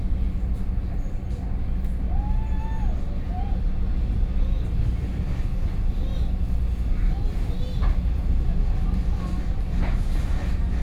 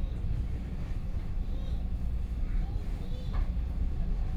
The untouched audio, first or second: first